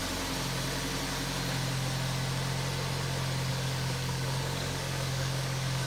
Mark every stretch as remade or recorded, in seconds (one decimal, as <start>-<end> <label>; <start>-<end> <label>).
0.0-3.5 recorded; 3.5-5.9 remade